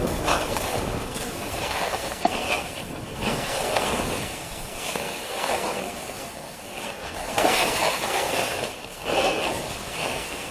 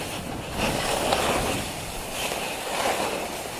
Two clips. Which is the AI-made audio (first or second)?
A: first